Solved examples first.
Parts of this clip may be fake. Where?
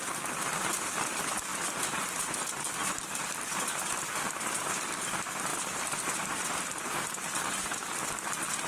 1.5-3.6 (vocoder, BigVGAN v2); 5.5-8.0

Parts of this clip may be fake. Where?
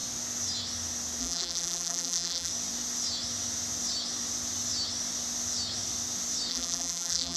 1.2-2.5 (vocoder, BigVGAN v2); 6.5-7.4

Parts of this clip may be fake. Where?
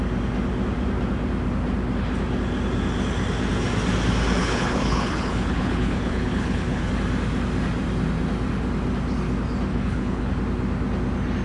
4.4-6.9 (codec, HILCodec); 9.7-10.3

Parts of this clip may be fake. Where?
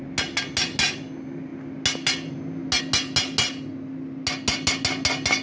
none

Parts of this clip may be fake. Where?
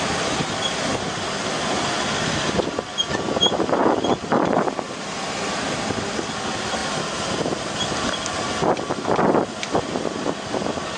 6.8-7.8 (vocoder, BigVGAN v2)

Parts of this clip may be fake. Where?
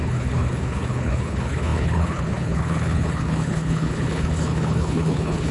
0.0-5.5 (codec, HILCodec)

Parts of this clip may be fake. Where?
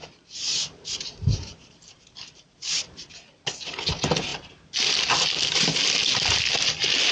0.0-3.1 (vocoder, BigVGAN v2)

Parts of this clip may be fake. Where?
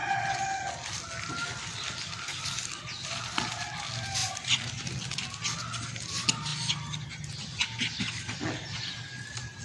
none